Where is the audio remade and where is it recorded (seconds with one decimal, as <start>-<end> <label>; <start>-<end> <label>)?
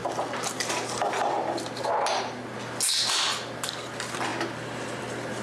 0.0-5.4 recorded